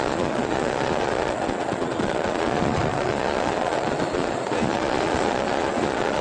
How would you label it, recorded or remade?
remade